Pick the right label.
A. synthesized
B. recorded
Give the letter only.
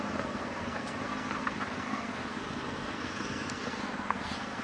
A